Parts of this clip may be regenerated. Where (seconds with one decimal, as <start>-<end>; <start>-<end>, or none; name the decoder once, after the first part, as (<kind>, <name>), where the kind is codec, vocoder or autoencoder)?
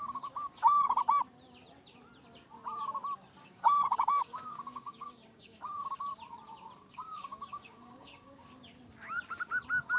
0.0-1.0 (codec, DAC); 3.4-6.1; 6.9-8.4